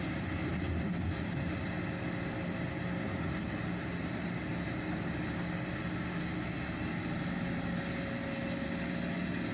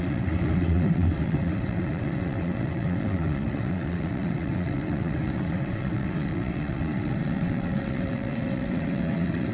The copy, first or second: second